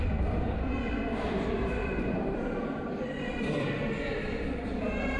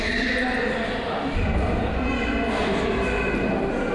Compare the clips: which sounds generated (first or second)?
first